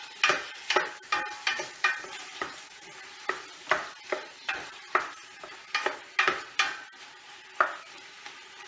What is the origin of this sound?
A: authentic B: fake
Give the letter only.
A